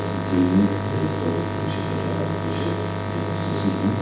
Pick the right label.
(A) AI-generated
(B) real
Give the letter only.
B